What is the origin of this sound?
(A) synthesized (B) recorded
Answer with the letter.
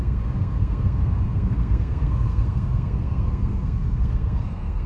A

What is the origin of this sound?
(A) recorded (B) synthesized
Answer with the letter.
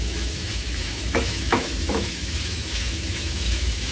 B